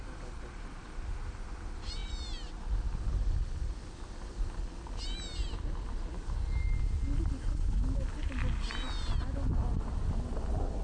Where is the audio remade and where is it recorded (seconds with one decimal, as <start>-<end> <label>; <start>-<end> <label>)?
0.0-10.8 recorded